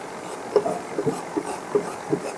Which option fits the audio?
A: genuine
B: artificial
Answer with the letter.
A